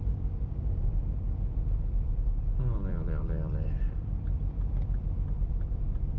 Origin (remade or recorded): remade